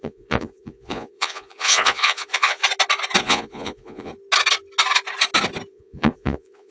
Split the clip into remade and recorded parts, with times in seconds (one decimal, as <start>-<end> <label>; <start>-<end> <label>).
0.0-2.6 remade; 2.6-3.2 recorded; 3.2-4.1 remade; 4.1-5.7 recorded; 5.7-6.7 remade